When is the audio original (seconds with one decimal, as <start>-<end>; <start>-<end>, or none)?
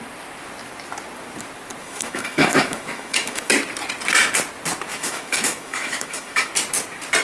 0.0-1.8; 3.5-4.9; 6.5-7.2